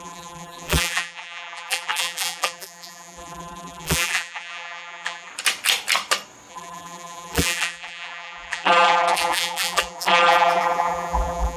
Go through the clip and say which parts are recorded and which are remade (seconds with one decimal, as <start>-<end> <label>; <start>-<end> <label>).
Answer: 0.0-5.3 remade; 5.3-6.5 recorded; 6.5-11.6 remade